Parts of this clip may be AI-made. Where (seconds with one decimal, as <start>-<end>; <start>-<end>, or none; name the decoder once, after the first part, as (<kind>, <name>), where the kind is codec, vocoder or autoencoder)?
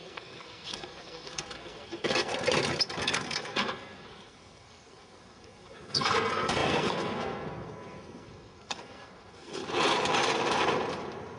0.0-2.3 (codec, SNAC); 3.0-9.6